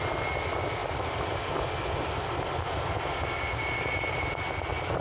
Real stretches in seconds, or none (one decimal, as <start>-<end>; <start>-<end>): 0.0-5.0